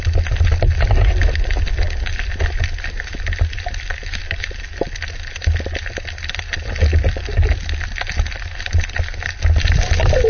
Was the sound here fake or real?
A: real